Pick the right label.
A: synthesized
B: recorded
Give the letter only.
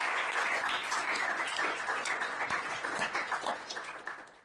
A